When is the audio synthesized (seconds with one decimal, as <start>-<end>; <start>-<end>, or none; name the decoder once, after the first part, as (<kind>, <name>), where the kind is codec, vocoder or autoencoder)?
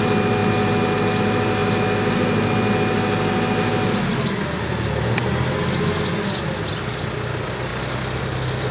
none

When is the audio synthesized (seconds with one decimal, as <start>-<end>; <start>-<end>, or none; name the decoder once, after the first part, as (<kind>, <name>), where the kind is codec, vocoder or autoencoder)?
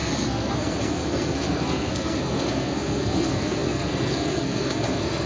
0.0-5.3 (codec, SNAC)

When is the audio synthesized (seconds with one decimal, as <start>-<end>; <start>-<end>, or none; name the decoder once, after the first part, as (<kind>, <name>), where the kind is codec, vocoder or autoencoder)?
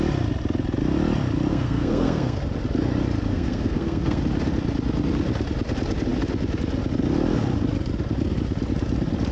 1.5-2.4 (codec, SNAC); 3.3-4.2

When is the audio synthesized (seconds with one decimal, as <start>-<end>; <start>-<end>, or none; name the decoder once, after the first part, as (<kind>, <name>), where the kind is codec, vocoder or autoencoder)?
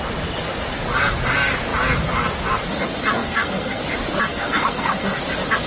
3.2-3.8 (codec, SNAC); 4.3-5.2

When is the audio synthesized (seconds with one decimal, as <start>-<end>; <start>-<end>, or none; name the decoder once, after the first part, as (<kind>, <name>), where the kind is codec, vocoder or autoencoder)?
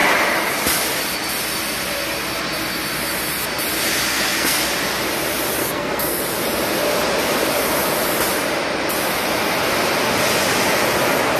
4.1-4.7 (codec, SNAC); 5.6-6.2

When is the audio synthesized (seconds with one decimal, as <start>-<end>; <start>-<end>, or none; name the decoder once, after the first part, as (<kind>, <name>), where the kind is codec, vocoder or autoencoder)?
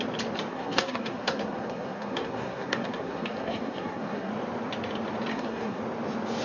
0.5-4.3 (codec, SNAC); 5.3-5.8